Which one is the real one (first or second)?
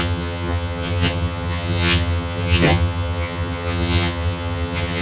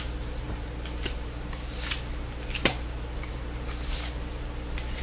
second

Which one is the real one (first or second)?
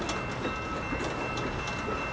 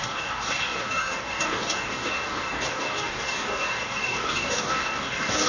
first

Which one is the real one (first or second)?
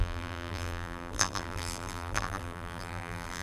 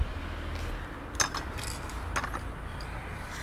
second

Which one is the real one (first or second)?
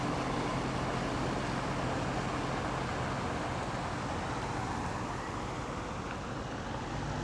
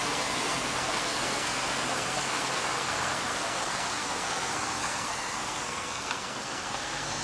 first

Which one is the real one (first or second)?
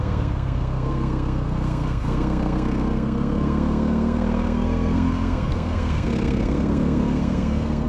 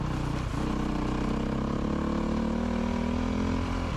second